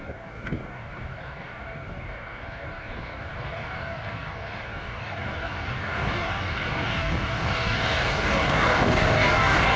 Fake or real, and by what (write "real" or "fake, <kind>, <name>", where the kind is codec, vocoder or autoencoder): fake, codec, DAC